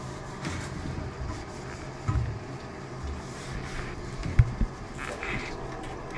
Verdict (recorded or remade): recorded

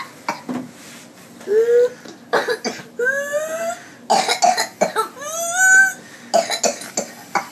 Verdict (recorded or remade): recorded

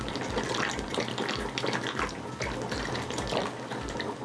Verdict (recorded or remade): recorded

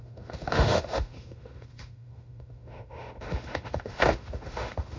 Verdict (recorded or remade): remade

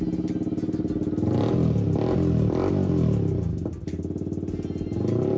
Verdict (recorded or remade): recorded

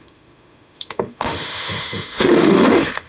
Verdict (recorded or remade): remade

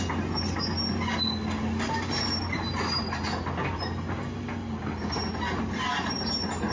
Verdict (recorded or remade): recorded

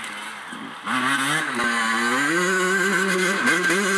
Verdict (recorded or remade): recorded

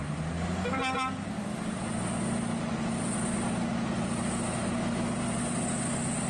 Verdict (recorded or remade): recorded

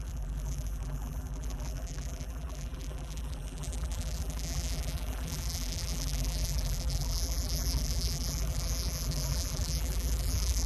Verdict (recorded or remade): remade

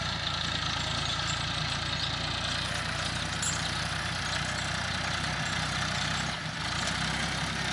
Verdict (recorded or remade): recorded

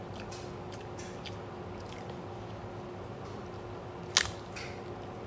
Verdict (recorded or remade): recorded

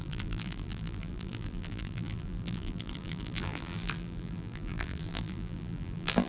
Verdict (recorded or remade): remade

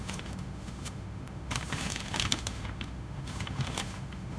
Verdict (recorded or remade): remade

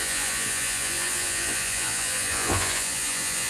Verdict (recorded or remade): remade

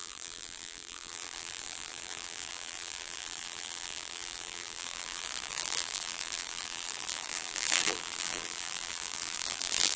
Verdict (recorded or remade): remade